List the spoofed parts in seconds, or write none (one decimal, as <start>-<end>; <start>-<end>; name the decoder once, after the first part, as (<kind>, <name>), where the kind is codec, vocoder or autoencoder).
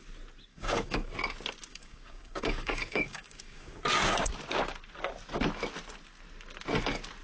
0.5-1.1 (codec, DAC); 1.7-3.8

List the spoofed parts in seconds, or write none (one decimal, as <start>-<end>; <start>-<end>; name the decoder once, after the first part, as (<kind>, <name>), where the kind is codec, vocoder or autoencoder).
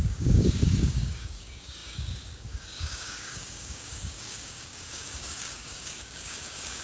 0.0-6.8 (codec, DAC)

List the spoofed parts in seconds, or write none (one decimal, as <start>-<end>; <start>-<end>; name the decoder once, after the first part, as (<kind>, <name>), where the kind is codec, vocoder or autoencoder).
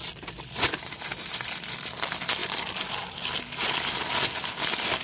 none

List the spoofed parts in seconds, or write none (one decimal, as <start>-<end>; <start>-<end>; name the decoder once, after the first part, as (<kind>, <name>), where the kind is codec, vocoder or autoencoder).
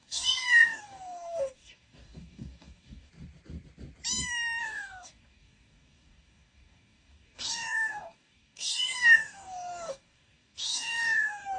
0.0-3.1 (codec, DAC); 4.6-11.6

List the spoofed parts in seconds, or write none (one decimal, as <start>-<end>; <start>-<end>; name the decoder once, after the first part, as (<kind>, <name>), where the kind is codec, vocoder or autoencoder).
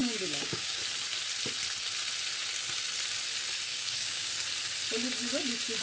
0.0-0.8 (codec, DAC); 3.7-4.3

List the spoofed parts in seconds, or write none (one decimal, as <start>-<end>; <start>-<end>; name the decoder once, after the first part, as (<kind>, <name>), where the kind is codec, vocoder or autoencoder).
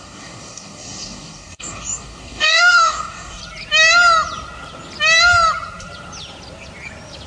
0.0-3.4 (codec, DAC)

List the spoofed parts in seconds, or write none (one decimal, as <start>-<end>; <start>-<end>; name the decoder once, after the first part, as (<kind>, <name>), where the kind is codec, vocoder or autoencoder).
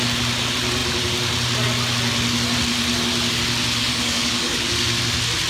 3.8-5.0 (codec, DAC)